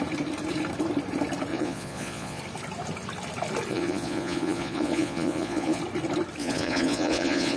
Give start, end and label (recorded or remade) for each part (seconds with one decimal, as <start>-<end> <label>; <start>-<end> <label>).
0.0-1.5 recorded; 1.5-2.4 remade; 2.4-3.7 recorded; 3.7-5.8 remade; 5.8-6.4 recorded; 6.4-7.6 remade